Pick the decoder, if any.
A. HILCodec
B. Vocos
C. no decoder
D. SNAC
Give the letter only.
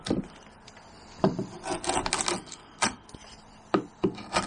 C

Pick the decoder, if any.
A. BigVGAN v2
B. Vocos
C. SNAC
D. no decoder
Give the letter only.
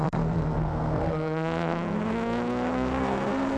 C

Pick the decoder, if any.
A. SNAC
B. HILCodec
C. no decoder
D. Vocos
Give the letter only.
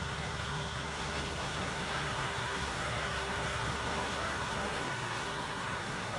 A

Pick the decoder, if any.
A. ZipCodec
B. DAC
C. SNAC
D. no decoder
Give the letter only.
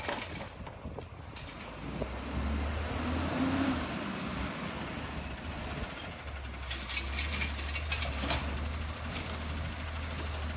D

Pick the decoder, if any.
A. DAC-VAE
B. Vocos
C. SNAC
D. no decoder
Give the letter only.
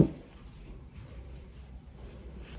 D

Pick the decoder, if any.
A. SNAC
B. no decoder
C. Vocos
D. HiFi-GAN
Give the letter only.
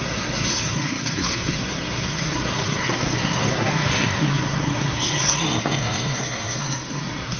A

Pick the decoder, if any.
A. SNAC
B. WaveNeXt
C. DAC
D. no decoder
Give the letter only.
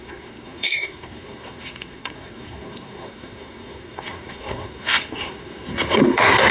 A